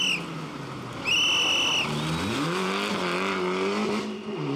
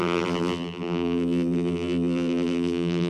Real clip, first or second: first